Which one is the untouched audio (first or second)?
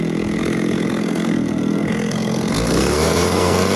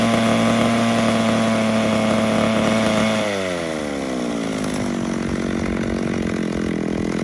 second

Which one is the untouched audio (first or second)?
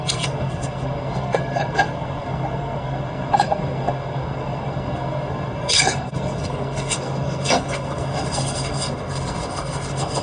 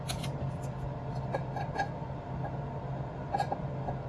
second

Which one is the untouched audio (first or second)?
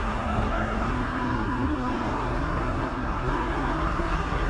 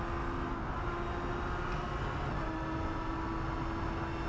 second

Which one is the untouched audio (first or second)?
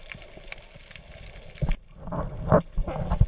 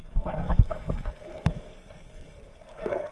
first